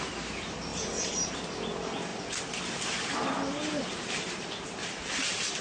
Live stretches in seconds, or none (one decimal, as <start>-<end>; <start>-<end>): 0.0-0.7; 1.3-5.6